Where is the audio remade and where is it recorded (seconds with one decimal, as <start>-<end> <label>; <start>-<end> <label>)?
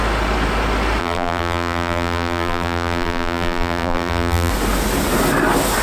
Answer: 0.0-1.0 recorded; 1.0-4.5 remade; 4.5-5.8 recorded